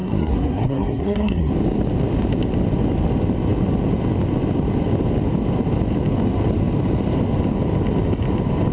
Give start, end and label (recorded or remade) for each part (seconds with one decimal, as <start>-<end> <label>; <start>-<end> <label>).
0.0-1.5 remade; 1.5-8.7 recorded